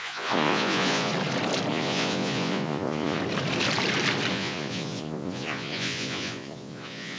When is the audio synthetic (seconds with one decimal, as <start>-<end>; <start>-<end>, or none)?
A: 0.0-1.1; 1.7-3.2; 4.3-7.2